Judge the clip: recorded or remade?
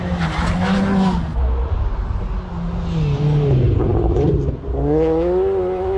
recorded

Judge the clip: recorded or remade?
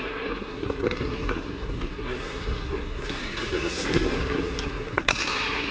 remade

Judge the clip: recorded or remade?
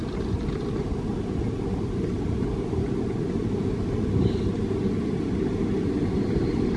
recorded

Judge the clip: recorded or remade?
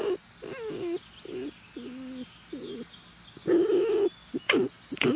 recorded